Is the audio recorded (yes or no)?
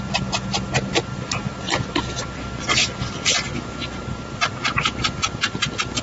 yes